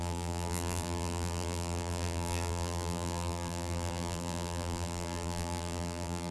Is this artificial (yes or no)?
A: yes